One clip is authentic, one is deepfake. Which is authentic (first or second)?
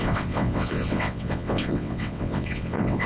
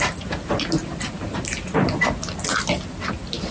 second